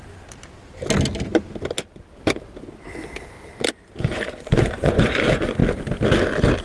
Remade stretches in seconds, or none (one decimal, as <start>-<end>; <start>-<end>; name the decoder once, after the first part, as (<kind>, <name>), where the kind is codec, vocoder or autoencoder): 4.0-5.6 (vocoder, Vocos)